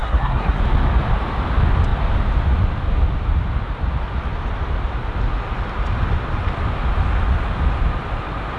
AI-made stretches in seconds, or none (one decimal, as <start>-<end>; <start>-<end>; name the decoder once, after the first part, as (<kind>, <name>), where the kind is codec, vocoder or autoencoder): 0.0-0.6 (codec, SNAC)